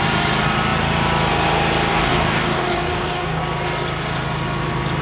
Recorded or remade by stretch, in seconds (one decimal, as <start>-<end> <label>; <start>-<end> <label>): 0.0-1.9 recorded; 1.9-3.4 remade; 3.4-5.0 recorded